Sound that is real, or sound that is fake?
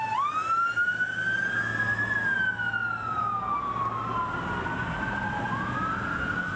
real